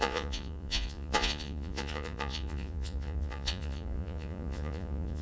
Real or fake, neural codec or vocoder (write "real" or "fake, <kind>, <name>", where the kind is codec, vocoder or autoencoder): fake, vocoder, Vocos